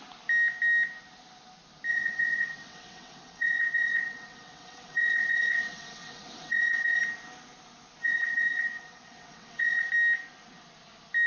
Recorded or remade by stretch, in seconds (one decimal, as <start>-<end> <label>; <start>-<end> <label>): 0.0-1.9 recorded; 1.9-7.0 remade; 7.0-8.0 recorded; 8.0-9.9 remade; 9.9-11.3 recorded